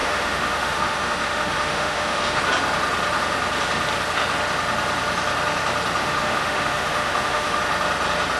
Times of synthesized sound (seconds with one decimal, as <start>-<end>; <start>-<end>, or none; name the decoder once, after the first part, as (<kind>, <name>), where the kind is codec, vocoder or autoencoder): 0.0-2.4 (autoencoder, DAC-VAE); 6.0-7.6